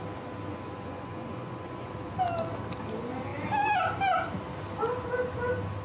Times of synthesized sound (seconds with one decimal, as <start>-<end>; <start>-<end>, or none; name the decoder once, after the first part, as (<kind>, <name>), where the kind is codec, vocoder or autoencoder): 0.5-1.9 (vocoder, Vocos)